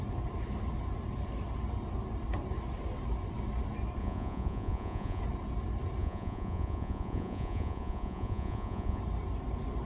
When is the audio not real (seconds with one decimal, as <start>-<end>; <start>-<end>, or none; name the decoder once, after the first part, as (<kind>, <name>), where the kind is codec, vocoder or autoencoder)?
4.0-5.2 (vocoder, Vocos); 6.0-9.0